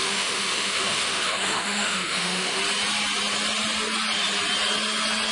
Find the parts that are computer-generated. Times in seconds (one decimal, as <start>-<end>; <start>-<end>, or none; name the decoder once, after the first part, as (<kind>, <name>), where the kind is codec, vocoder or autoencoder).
0.0-2.6 (autoencoder, DAC-VAE)